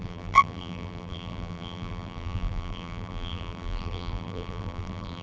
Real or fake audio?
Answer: fake